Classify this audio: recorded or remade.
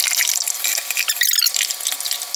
recorded